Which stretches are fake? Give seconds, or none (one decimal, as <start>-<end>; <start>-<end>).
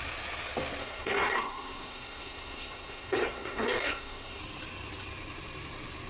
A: 0.8-4.4